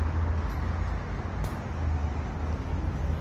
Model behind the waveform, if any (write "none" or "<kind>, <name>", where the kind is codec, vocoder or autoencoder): none